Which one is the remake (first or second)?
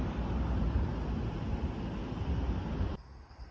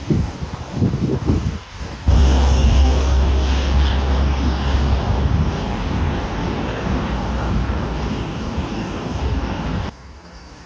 second